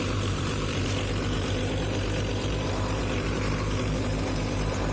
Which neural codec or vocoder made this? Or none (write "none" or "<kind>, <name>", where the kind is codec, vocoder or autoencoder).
vocoder, BigVGAN v2